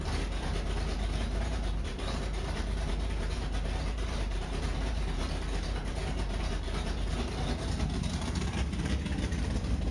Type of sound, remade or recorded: remade